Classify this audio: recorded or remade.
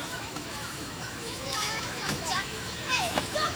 remade